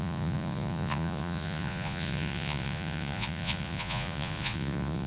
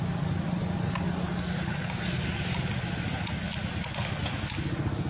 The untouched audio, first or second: second